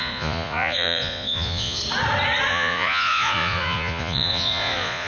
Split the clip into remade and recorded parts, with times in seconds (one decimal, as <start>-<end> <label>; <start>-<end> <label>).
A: 0.0-1.8 remade; 1.8-2.5 recorded; 2.5-5.1 remade